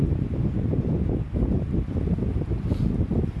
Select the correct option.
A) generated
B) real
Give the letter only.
B